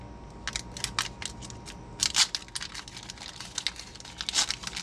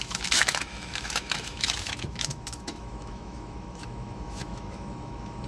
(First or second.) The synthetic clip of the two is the second